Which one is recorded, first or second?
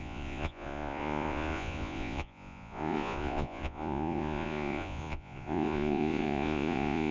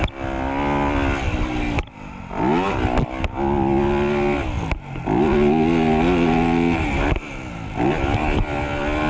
second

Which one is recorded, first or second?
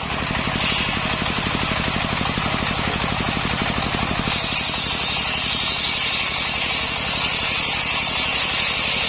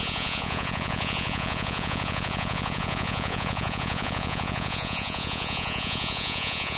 first